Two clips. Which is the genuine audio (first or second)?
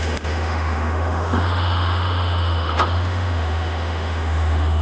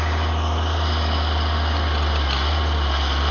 second